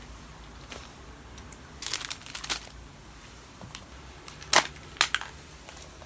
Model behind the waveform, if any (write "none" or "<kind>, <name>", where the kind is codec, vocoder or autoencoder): none